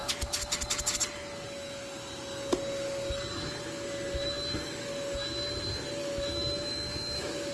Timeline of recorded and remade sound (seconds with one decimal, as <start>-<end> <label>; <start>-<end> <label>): 0.0-4.5 recorded; 4.5-4.9 remade; 4.9-6.0 recorded; 6.0-7.5 remade